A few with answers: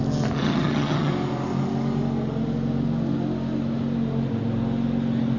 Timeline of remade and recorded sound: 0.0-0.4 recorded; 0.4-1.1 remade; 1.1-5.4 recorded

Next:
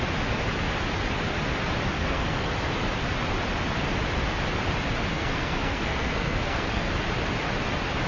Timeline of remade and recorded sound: 0.0-1.9 recorded; 1.9-2.5 remade; 2.5-5.1 recorded; 5.1-6.9 remade; 6.9-8.1 recorded

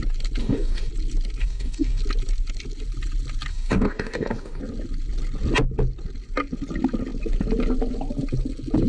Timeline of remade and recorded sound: 0.0-0.4 recorded; 0.4-0.9 remade; 0.9-1.4 recorded; 1.4-2.0 remade; 2.0-3.5 recorded; 3.5-4.6 remade; 4.6-8.9 recorded

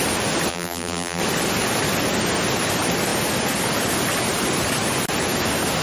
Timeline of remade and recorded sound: 0.0-0.5 recorded; 0.5-1.2 remade; 1.2-5.8 recorded

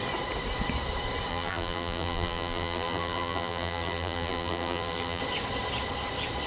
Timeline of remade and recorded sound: 0.0-1.3 recorded; 1.3-5.2 remade; 5.2-6.5 recorded

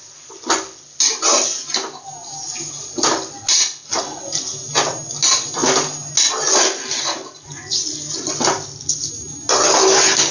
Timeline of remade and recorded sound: 0.0-10.3 recorded

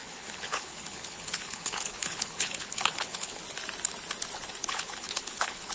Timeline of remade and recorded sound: 0.0-3.4 remade; 3.4-4.6 recorded; 4.6-5.7 remade